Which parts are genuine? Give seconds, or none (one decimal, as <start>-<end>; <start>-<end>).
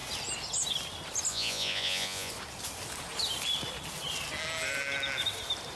0.0-1.3; 2.3-5.8